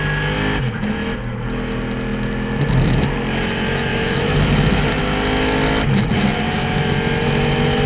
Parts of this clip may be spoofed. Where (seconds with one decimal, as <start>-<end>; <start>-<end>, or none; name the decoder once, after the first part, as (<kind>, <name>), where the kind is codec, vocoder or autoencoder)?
3.9-5.0 (vocoder, BigVGAN v2)